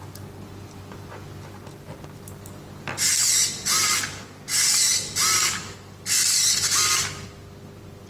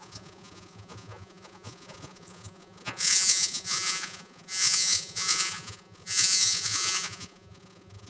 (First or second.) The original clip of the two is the first